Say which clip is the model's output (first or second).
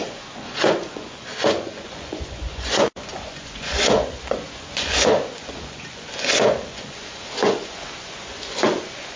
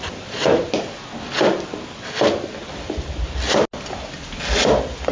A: first